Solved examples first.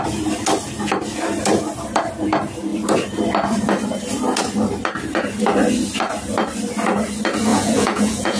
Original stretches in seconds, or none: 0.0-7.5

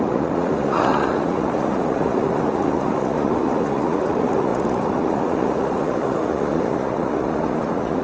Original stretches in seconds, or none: none

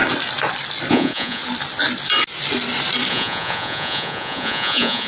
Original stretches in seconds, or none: 0.0-0.9; 1.4-3.1

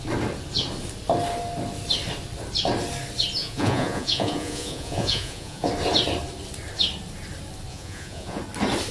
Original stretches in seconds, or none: 0.0-3.4; 5.7-7.7; 8.4-8.9